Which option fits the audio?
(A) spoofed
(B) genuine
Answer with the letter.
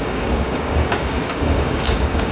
A